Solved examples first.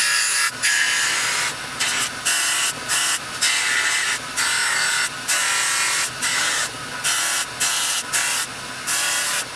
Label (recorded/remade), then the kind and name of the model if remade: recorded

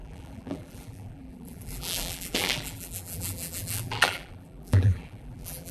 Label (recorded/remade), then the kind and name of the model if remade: remade, vocoder, BigVGAN v2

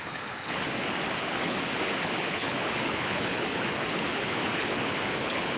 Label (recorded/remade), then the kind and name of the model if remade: remade, codec, HILCodec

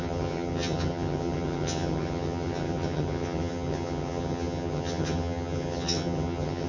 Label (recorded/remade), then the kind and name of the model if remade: remade, vocoder, HiFi-GAN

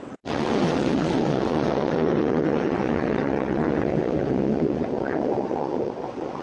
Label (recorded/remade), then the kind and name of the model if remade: remade, vocoder, WaveNeXt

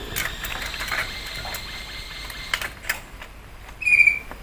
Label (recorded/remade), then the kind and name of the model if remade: recorded